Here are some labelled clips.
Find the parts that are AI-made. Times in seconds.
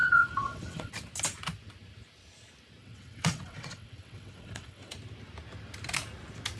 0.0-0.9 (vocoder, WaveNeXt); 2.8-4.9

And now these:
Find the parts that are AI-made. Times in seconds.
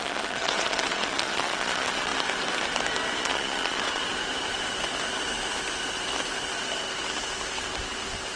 0.0-2.1 (vocoder, Vocos); 3.2-4.0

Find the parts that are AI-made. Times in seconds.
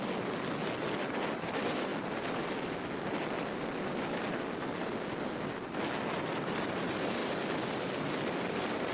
none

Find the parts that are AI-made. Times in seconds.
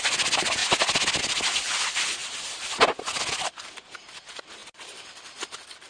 2.2-2.7 (vocoder, BigVGAN v2)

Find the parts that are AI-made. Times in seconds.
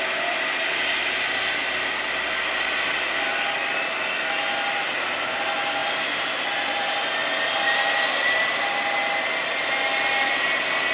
none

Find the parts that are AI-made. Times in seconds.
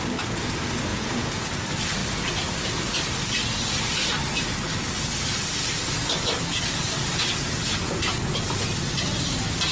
0.9-1.5 (vocoder, Vocos)